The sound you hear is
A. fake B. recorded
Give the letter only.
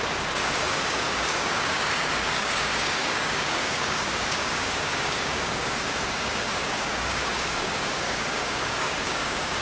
A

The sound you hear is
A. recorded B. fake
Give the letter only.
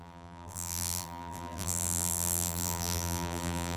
B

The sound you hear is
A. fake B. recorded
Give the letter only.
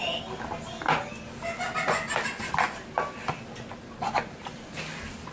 B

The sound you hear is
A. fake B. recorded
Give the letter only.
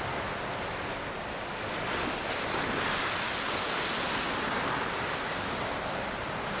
B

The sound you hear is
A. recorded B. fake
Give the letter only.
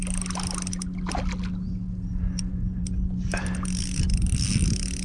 A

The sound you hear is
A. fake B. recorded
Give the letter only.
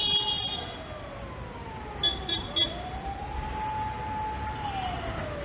B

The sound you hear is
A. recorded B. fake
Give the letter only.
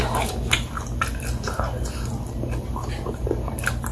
A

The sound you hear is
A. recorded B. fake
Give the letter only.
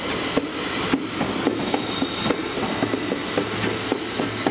A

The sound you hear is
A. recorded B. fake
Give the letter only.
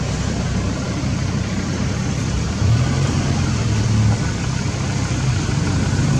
B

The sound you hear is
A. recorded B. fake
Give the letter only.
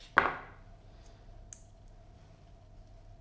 A